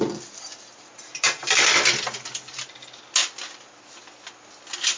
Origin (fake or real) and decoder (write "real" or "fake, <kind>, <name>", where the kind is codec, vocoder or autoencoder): real